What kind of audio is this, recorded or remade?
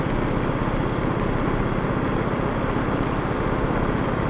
recorded